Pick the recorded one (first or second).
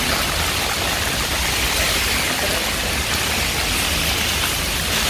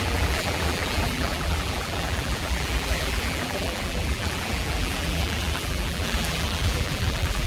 first